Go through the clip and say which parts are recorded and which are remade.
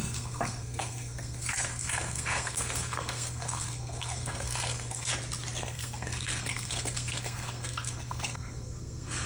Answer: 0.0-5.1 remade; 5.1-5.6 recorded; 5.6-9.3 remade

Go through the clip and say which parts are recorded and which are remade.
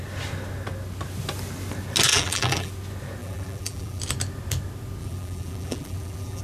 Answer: 0.0-2.1 recorded; 2.1-2.7 remade; 2.7-3.2 recorded; 3.2-4.0 remade; 4.0-5.0 recorded; 5.0-6.4 remade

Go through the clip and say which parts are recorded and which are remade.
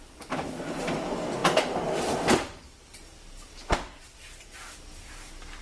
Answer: 0.0-5.6 recorded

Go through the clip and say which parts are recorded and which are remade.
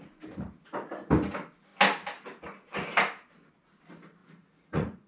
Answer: 0.0-4.2 recorded; 4.2-5.1 remade